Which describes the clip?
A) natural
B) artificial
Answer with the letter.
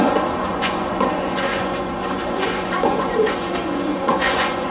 B